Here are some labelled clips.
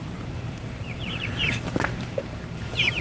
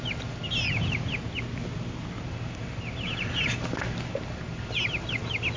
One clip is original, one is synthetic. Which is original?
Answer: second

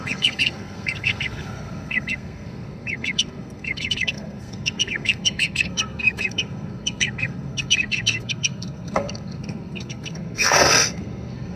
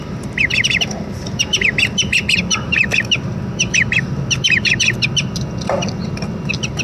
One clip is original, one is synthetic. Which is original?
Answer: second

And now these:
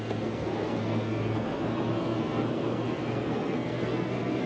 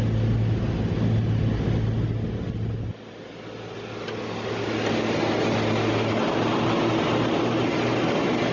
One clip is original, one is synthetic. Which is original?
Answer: second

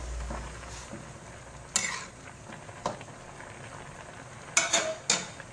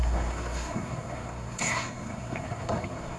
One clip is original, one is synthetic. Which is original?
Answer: first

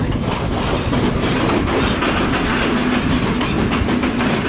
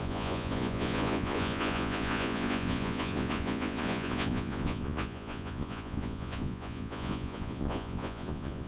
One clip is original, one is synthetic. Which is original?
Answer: first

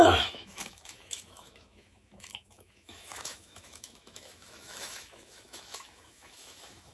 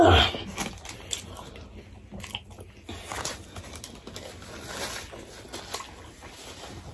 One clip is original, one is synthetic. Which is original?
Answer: second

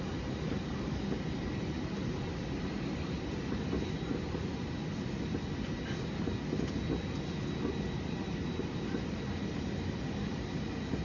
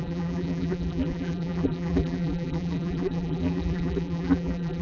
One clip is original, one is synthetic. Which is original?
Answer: first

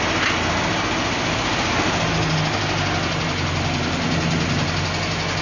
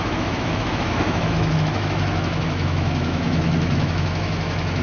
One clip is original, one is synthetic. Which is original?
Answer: first